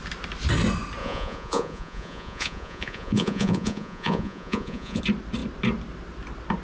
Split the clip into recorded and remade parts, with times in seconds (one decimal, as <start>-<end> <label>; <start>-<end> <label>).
0.0-1.0 recorded; 1.0-5.0 remade; 5.0-6.6 recorded